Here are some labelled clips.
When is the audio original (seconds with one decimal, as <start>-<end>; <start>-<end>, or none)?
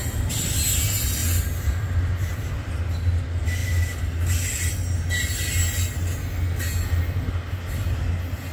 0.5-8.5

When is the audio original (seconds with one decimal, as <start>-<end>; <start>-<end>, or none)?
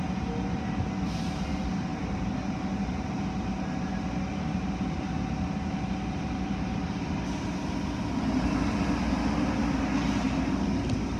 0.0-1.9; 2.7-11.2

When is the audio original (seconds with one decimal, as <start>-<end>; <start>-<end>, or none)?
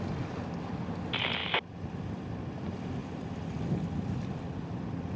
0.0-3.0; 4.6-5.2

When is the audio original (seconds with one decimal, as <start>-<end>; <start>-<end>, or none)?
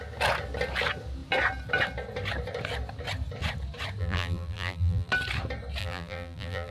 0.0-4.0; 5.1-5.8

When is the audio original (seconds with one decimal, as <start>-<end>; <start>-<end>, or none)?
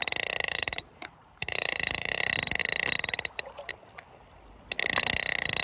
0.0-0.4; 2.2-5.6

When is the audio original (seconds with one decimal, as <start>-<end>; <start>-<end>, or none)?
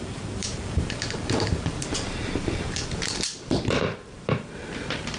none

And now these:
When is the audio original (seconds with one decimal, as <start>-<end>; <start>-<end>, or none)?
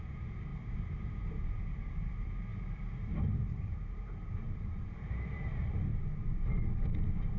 5.9-7.4